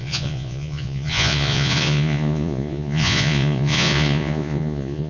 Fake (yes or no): yes